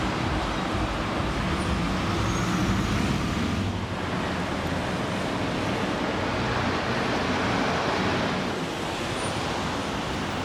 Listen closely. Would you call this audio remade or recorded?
recorded